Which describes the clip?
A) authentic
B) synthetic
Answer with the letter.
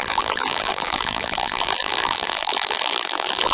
B